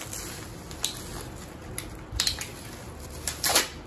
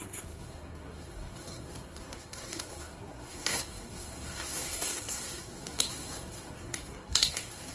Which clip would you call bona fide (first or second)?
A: first